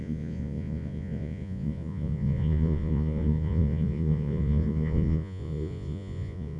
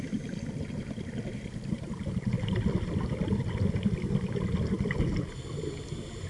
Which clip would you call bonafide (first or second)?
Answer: second